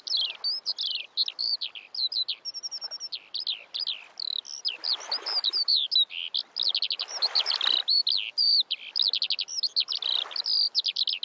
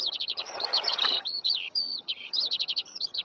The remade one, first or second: second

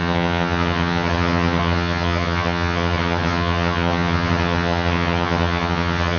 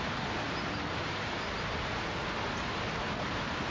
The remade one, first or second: first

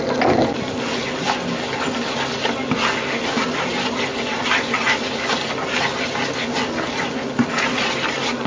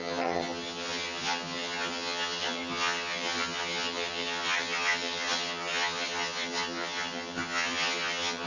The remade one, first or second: second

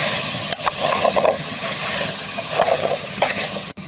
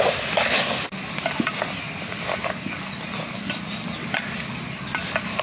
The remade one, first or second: first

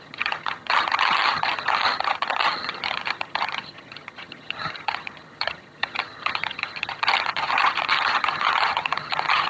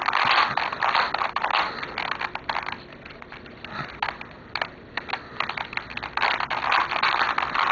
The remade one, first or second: first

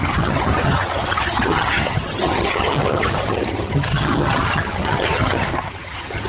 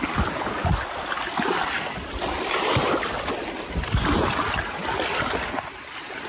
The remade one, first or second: first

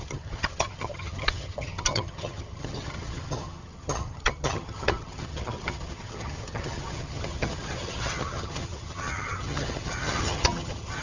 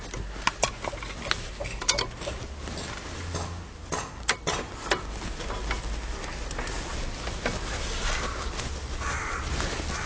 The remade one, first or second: first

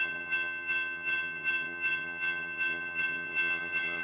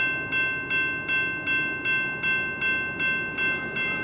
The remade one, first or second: first